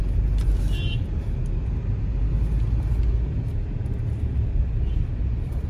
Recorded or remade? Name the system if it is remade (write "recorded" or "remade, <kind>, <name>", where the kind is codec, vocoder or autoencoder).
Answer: recorded